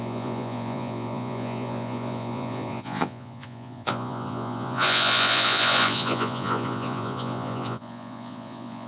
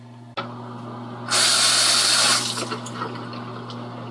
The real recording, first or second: second